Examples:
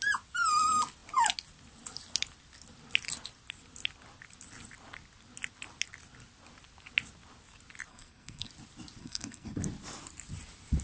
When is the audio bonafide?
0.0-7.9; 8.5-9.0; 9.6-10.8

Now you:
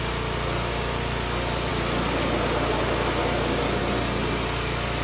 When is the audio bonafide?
0.0-5.0